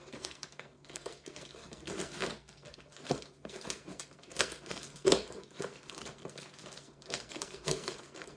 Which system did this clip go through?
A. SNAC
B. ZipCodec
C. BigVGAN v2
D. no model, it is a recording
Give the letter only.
A